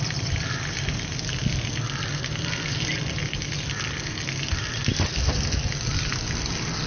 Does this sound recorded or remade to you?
recorded